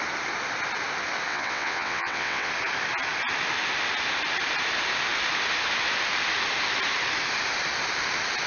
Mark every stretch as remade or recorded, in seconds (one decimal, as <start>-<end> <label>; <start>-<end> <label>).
0.0-1.3 recorded; 1.3-2.5 remade; 2.5-8.5 recorded